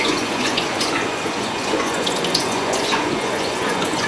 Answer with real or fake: fake